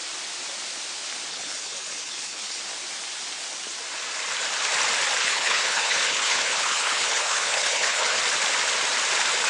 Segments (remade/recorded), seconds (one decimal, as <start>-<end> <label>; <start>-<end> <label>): 0.0-1.3 recorded; 1.3-2.6 remade; 2.6-5.2 recorded; 5.2-8.2 remade; 8.2-9.5 recorded